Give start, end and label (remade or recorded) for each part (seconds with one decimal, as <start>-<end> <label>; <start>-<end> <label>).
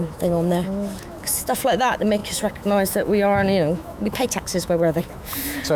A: 0.0-5.8 remade